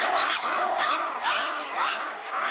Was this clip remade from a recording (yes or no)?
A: yes